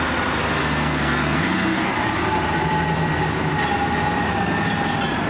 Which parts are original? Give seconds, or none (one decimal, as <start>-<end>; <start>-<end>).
0.0-0.6; 1.9-5.3